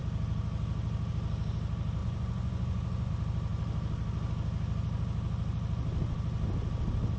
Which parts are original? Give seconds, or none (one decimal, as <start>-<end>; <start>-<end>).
0.0-2.0; 3.1-7.2